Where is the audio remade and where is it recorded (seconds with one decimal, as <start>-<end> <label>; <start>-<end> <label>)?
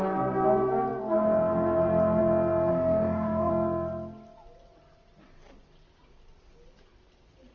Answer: 0.0-2.7 recorded; 2.7-3.5 remade; 3.5-7.5 recorded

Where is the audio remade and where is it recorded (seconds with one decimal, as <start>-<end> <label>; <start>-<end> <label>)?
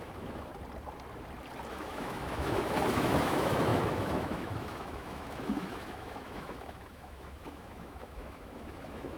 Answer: 0.0-0.5 remade; 0.5-1.7 recorded; 1.7-9.2 remade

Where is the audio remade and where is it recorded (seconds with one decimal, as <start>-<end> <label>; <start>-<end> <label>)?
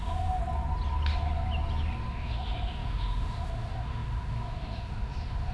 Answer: 0.0-0.4 remade; 0.4-2.1 recorded; 2.1-5.5 remade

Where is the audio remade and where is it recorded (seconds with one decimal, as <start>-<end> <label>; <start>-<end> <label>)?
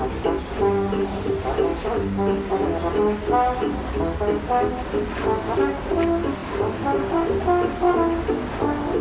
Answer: 0.0-9.0 recorded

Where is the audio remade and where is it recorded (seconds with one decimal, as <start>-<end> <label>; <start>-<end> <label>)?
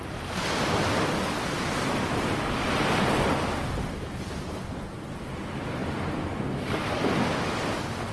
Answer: 0.0-8.1 recorded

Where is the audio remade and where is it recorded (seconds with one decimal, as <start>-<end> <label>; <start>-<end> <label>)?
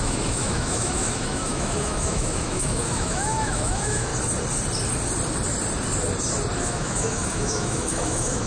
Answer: 0.0-4.1 remade; 4.1-6.6 recorded; 6.6-8.5 remade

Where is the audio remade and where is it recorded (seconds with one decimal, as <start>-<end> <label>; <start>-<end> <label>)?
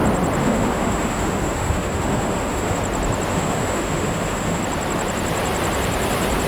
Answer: 0.0-0.4 recorded; 0.4-2.8 remade; 2.8-3.3 recorded; 3.3-4.6 remade; 4.6-6.5 recorded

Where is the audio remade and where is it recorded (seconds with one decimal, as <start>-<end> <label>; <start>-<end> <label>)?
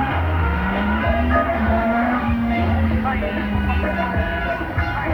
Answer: 0.0-1.0 remade; 1.0-1.5 recorded; 1.5-2.7 remade; 2.7-5.1 recorded